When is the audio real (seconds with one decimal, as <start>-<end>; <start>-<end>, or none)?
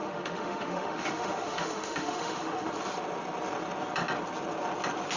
2.7-5.2